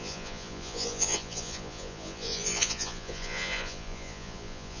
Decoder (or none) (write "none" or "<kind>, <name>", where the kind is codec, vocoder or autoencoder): vocoder, Vocos